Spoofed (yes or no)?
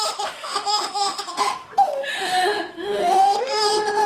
yes